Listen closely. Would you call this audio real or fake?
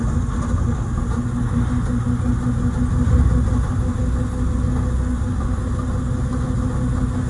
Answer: real